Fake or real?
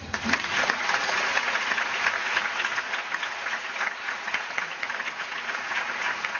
fake